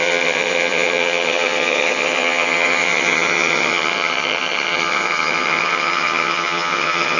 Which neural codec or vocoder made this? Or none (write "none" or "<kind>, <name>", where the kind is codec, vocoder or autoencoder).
vocoder, HiFi-GAN